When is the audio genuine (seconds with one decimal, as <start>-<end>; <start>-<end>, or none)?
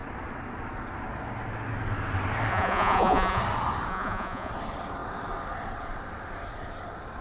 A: 0.0-2.5; 3.4-3.9; 4.5-7.2